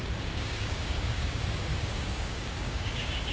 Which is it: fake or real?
fake